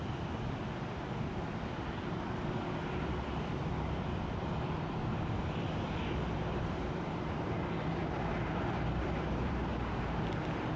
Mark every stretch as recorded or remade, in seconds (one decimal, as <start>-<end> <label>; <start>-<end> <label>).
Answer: 0.0-9.7 remade; 9.7-10.8 recorded